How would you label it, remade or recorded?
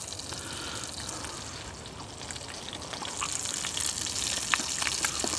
recorded